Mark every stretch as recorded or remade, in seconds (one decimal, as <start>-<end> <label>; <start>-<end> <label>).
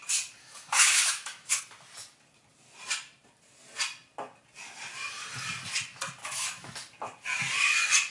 0.0-0.4 recorded; 0.4-1.6 remade; 1.6-6.2 recorded; 6.2-6.7 remade; 6.7-8.1 recorded